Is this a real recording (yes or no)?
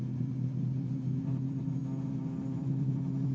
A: yes